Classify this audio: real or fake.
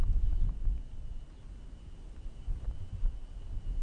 real